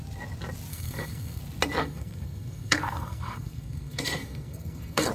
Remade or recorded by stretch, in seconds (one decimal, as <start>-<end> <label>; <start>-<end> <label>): 0.0-0.7 recorded; 0.7-1.4 remade; 1.4-1.8 recorded; 1.8-5.1 remade